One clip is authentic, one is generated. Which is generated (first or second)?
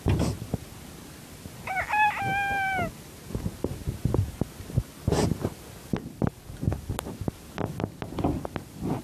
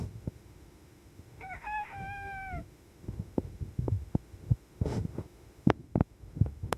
second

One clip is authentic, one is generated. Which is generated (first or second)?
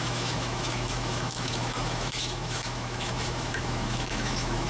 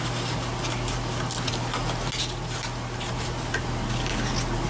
first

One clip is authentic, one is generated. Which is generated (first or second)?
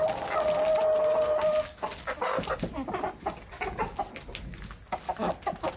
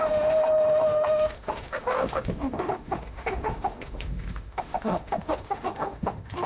second